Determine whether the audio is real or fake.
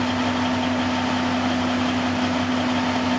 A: real